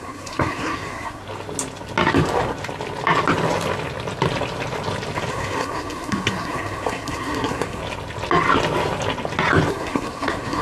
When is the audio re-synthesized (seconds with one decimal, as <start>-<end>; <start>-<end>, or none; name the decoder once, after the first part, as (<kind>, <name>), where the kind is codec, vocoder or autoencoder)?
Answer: 0.0-1.2 (codec, SNAC); 5.3-7.8; 9.7-10.6